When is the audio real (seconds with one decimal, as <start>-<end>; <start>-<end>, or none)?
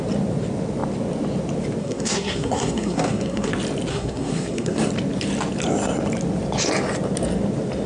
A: 0.0-1.8; 3.5-3.9; 4.9-7.9